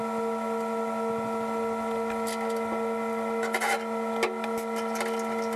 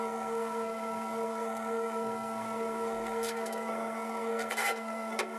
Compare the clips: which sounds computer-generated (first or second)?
second